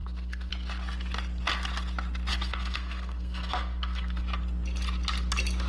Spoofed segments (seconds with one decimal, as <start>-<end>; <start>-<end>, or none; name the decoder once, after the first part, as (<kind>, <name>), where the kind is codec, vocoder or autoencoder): 0.0-0.5 (codec, SNAC); 2.3-4.2